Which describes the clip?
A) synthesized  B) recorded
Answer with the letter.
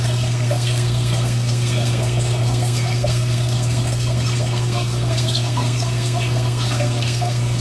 A